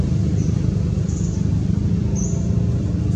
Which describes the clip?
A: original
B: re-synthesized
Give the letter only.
A